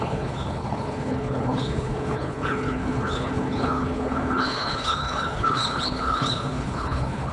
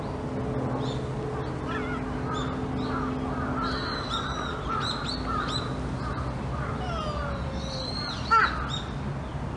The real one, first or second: second